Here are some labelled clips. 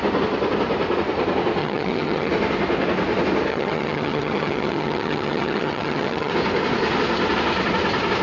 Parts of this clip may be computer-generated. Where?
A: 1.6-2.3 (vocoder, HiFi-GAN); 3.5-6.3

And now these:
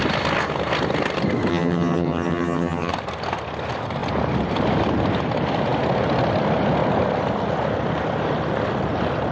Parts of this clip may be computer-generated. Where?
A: 1.5-2.9 (vocoder, HiFi-GAN)

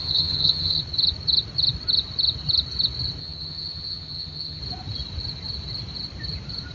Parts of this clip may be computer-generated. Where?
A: 0.0-0.8 (vocoder, HiFi-GAN); 3.2-4.6